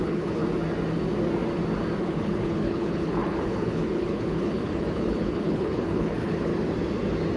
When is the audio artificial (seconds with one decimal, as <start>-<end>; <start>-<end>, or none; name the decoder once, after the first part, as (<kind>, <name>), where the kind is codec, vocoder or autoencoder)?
0.0-0.4 (codec, HILCodec); 2.0-6.5